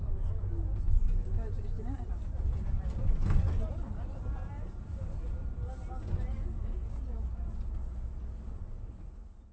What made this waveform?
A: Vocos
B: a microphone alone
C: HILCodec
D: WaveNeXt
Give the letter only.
B